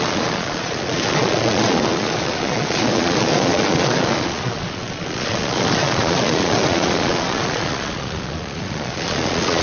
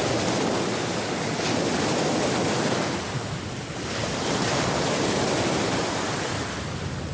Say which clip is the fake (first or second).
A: first